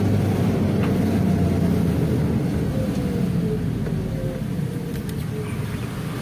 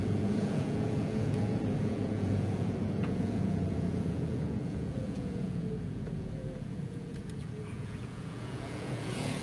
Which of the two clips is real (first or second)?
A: first